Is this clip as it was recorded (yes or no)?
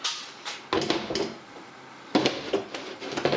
yes